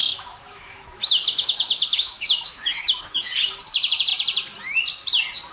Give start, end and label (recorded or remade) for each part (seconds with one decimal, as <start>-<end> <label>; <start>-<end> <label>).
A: 0.0-3.3 remade; 3.3-5.5 recorded